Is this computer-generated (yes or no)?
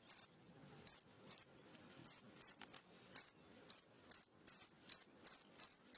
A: no